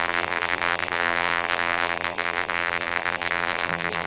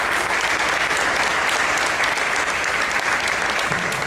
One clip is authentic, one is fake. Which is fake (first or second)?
first